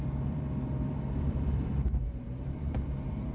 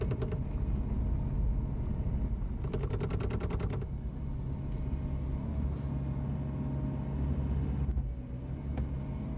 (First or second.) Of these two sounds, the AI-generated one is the first